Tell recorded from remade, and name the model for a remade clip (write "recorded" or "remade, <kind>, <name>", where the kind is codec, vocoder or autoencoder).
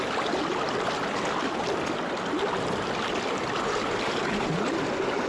recorded